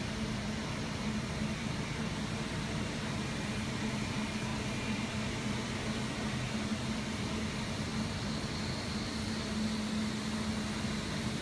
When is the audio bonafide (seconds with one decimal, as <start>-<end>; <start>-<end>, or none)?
0.0-11.4